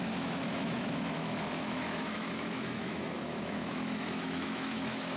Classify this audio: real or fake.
fake